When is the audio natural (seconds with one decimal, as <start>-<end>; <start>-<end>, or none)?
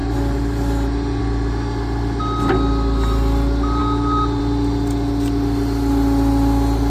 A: 0.0-6.9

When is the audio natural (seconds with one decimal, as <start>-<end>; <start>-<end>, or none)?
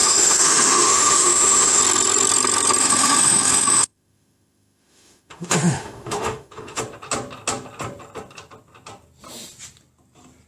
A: 1.8-2.8; 6.8-10.5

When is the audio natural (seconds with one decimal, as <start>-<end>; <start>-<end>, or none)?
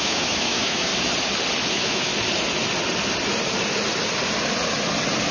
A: 0.9-1.7; 2.1-5.3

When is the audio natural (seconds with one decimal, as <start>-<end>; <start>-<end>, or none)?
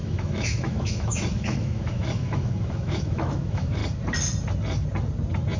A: 3.8-5.6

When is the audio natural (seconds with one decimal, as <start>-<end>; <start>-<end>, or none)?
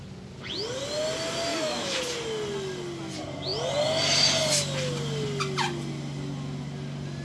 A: 0.0-1.5; 2.0-7.2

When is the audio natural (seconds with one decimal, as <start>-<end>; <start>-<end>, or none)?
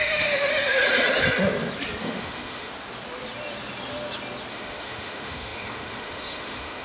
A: 0.5-2.0; 2.7-4.5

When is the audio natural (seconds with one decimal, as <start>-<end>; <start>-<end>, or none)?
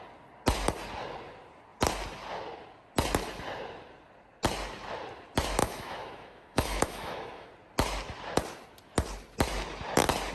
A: 0.0-5.6; 7.5-10.3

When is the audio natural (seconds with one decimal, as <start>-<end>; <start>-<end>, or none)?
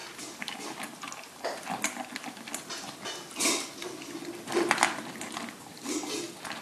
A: 0.0-6.6